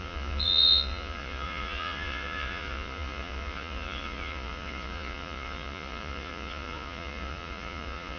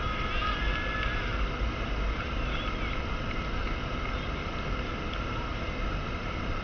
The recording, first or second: second